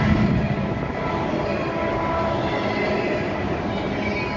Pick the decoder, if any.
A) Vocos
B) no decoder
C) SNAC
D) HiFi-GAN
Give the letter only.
B